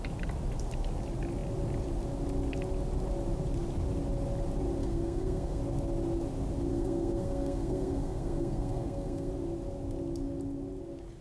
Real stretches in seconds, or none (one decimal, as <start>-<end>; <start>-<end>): 0.0-4.8; 5.6-6.7; 9.3-11.2